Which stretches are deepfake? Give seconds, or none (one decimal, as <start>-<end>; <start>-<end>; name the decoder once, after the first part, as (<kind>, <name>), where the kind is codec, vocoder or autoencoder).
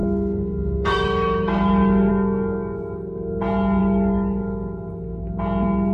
0.0-2.1 (autoencoder, DAC-VAE); 3.8-4.9